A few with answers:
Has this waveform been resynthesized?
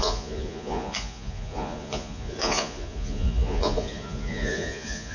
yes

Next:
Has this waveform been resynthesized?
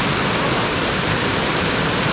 yes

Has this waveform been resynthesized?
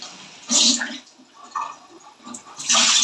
yes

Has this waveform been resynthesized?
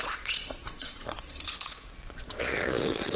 yes